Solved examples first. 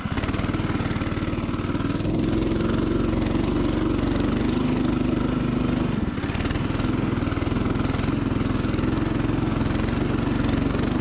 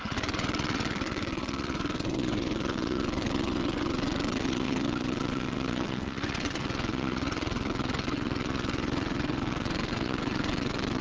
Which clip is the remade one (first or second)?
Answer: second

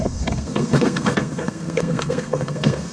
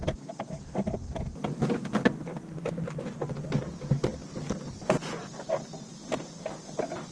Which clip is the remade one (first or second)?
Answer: first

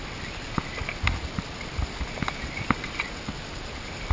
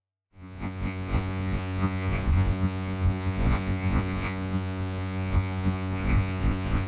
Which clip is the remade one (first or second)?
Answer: second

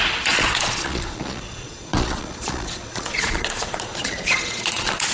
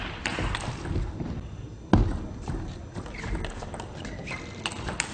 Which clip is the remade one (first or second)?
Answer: first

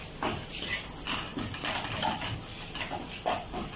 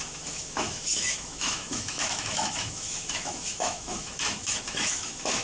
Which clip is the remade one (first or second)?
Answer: second